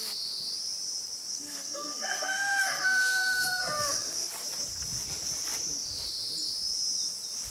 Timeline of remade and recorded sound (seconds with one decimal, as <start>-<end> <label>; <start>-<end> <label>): 0.0-1.3 recorded; 1.3-4.3 remade; 4.3-7.5 recorded